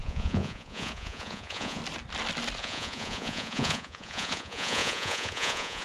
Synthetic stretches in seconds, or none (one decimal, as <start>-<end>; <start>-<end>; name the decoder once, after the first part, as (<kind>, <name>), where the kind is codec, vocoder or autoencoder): 0.0-1.8 (vocoder, Vocos); 2.6-5.8